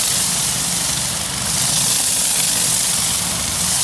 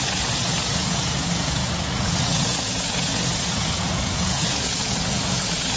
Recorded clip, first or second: first